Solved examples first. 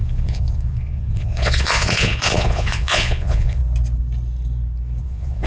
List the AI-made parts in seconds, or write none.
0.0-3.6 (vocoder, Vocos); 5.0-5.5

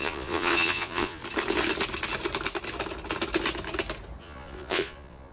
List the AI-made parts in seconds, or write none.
0.0-1.2 (vocoder, Vocos); 4.2-5.3

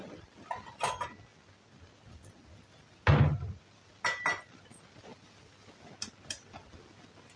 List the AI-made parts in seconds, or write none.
none

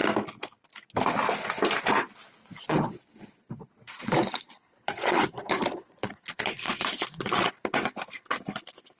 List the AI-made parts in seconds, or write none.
2.4-7.5 (vocoder, Vocos)

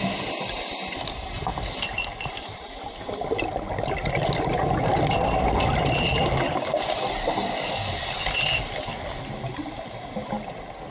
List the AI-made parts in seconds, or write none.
none

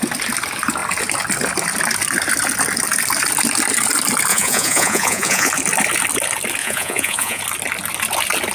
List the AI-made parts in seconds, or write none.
4.3-5.5 (vocoder, Vocos); 6.6-7.4

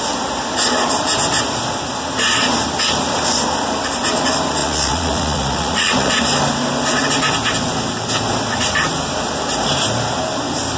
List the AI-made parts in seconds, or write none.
4.6-6.1 (vocoder, Vocos)